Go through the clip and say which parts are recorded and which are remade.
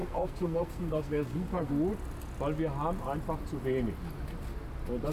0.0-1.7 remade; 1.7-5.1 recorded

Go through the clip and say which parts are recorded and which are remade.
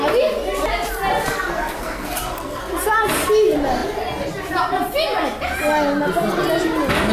0.0-1.3 recorded; 1.3-2.7 remade; 2.7-7.1 recorded